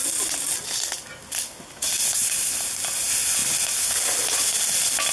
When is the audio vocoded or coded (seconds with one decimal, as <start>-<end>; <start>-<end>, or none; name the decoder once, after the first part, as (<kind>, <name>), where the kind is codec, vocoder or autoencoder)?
none